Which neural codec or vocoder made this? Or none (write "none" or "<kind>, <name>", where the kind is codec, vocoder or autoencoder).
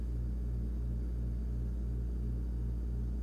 none